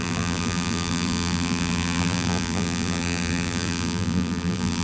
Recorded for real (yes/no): no